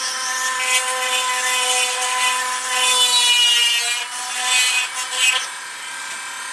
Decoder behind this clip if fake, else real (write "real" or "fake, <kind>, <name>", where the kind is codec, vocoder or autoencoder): real